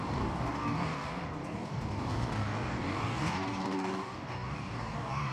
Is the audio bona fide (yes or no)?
no